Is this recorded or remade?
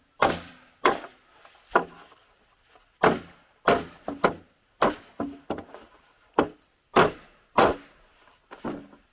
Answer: recorded